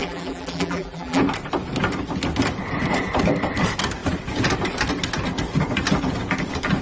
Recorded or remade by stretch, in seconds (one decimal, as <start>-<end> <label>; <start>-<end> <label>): 0.0-1.2 remade; 1.2-6.8 recorded